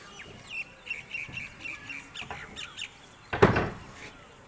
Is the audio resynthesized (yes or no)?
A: no